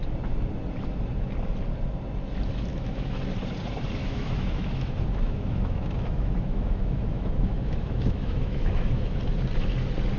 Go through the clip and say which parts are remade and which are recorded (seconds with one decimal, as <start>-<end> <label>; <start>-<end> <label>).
0.0-2.7 recorded; 2.7-3.2 remade; 3.2-4.0 recorded; 4.0-9.2 remade; 9.2-10.2 recorded